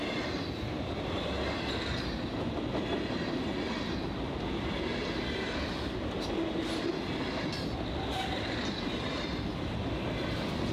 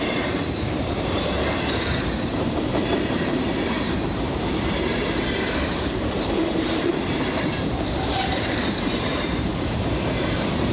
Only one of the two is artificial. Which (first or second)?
second